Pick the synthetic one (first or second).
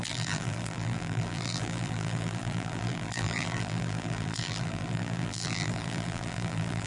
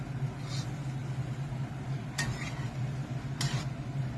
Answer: first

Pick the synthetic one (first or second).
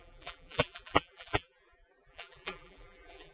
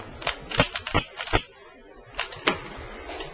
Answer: first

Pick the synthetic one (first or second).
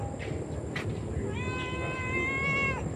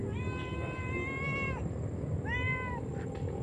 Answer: second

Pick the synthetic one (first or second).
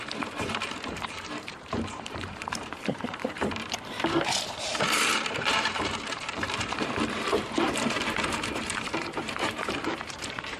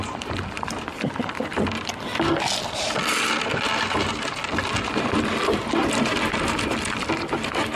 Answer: first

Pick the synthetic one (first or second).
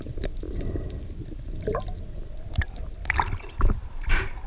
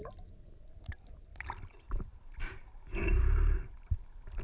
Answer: first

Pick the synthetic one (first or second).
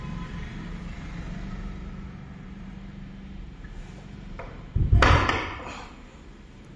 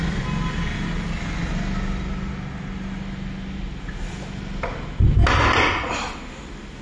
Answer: first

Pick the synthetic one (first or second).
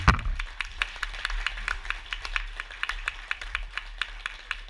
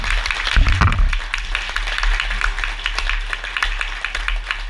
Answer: first